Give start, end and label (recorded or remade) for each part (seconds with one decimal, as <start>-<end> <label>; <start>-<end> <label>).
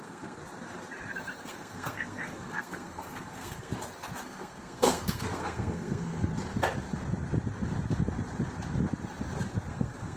0.0-0.4 remade; 0.4-1.4 recorded; 1.4-3.7 remade; 3.7-4.2 recorded; 4.2-6.3 remade; 6.3-9.7 recorded; 9.7-10.2 remade